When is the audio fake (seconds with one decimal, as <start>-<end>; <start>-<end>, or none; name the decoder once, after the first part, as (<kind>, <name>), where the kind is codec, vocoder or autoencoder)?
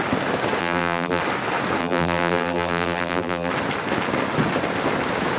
0.6-1.2 (vocoder, BigVGAN v2); 1.8-3.5